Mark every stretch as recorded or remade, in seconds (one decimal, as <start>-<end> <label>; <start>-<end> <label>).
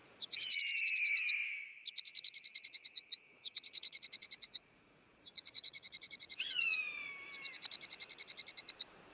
0.0-0.6 remade; 0.6-2.5 recorded; 2.5-7.1 remade; 7.1-9.1 recorded